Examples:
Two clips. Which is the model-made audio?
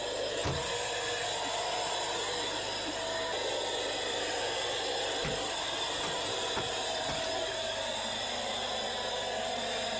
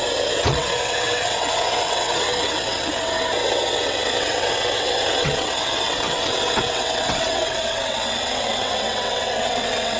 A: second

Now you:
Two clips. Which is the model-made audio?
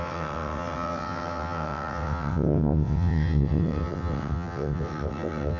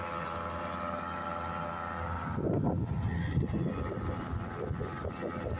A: first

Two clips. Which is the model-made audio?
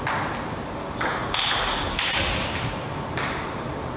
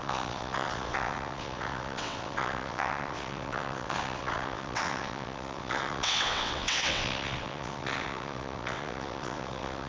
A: second